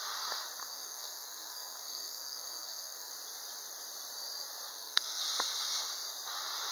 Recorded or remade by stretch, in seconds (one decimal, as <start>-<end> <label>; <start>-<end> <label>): 0.0-0.6 recorded; 0.6-3.1 remade; 3.1-4.7 recorded; 4.7-5.2 remade; 5.2-6.7 recorded